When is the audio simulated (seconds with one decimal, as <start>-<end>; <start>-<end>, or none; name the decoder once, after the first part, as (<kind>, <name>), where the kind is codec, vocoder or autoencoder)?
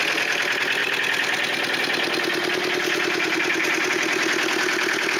none